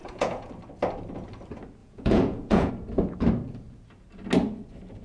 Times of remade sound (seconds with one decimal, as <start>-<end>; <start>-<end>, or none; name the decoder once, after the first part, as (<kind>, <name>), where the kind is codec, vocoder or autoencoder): 0.0-0.5 (vocoder, Vocos); 1.8-2.7